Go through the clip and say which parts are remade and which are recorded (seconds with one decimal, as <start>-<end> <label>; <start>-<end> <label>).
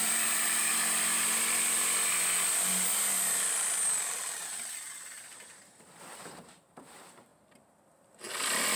0.0-0.7 remade; 0.7-4.3 recorded; 4.3-7.3 remade; 7.3-8.8 recorded